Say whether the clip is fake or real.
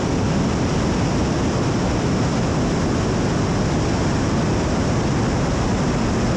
real